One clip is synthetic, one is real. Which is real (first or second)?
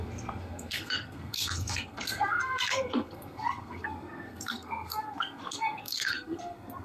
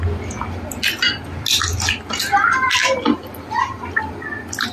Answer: second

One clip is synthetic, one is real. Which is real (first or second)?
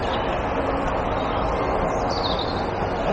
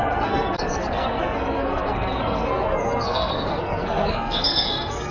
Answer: first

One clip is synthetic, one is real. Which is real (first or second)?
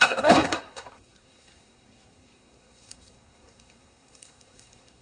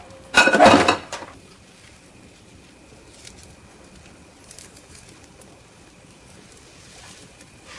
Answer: second